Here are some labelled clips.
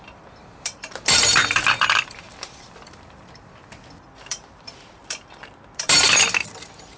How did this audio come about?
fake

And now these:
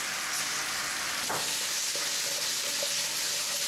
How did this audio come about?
real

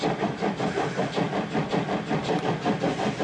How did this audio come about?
real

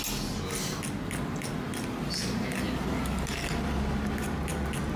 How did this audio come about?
real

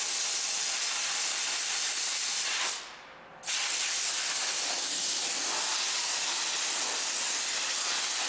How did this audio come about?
fake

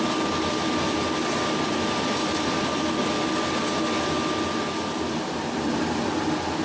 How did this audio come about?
real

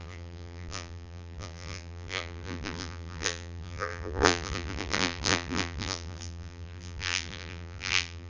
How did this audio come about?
fake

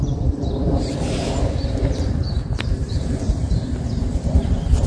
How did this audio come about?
fake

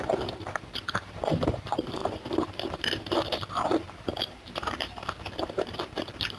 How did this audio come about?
fake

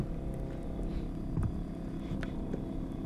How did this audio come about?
real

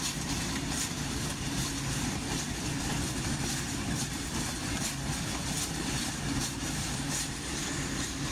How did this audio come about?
fake